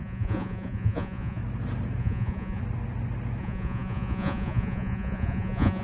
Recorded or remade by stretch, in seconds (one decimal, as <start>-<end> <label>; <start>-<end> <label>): 0.0-1.4 remade; 1.4-2.0 recorded; 2.0-2.6 remade; 2.6-3.4 recorded; 3.4-5.8 remade